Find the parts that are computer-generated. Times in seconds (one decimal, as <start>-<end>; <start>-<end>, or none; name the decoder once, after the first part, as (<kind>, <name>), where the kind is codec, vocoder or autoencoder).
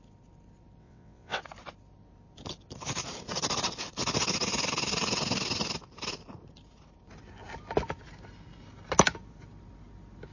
0.8-1.4 (vocoder, WaveNeXt)